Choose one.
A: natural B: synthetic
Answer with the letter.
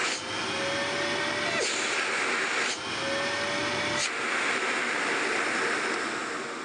A